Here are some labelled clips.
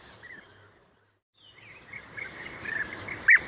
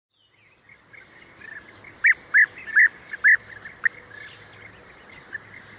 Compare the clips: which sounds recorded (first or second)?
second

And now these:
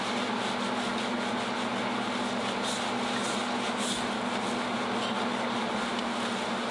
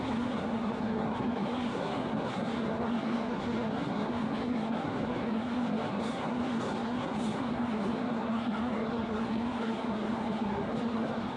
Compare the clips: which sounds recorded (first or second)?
first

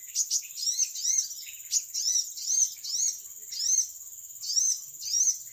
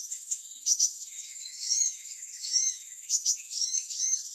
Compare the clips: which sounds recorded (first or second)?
first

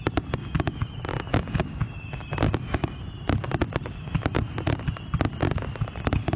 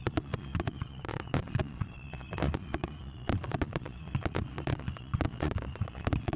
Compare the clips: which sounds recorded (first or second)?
first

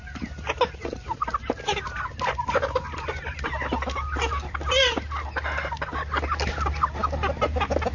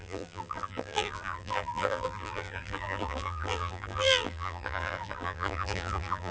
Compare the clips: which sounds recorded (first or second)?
first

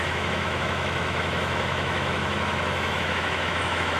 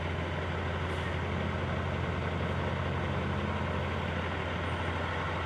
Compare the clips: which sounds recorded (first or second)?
second